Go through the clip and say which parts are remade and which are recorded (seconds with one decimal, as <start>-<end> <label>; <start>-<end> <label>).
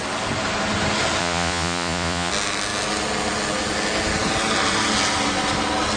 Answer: 0.0-1.2 recorded; 1.2-2.3 remade; 2.3-6.0 recorded